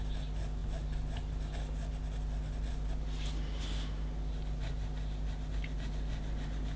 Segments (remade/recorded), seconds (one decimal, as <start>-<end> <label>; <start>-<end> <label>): 0.0-6.8 recorded